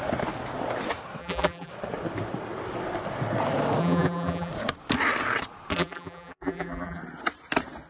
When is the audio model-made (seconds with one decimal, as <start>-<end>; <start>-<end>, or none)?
1.2-1.7; 3.8-4.5; 5.7-7.0